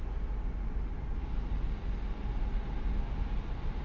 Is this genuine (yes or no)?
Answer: yes